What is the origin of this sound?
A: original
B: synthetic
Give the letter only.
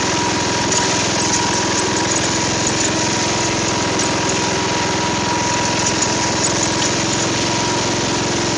A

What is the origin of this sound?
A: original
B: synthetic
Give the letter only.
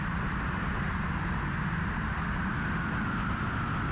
A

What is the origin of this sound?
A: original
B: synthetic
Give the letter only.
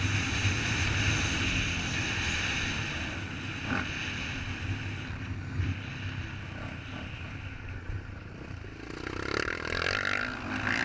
A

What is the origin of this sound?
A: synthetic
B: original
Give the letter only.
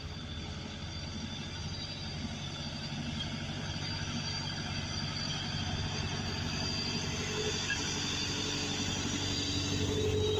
B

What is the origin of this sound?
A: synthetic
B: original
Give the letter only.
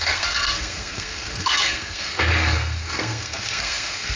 A